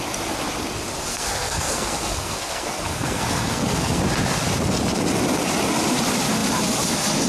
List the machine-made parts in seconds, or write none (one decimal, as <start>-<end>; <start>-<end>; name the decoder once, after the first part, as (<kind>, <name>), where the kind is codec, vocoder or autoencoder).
1.1-4.0 (codec, SNAC)